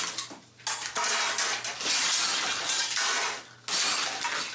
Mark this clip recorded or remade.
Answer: recorded